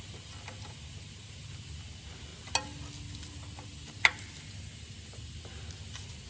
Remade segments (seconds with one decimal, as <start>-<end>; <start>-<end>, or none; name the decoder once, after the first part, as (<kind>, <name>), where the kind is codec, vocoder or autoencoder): none